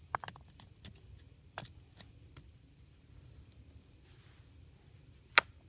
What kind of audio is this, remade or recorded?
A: recorded